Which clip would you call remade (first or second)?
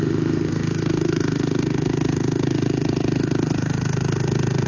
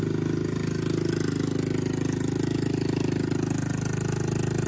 first